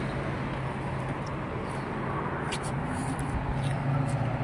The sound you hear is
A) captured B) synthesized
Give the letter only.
A